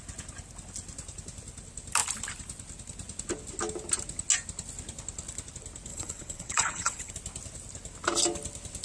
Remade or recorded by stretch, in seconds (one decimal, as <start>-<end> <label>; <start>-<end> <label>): 0.0-5.9 recorded; 5.9-7.1 remade; 7.1-8.8 recorded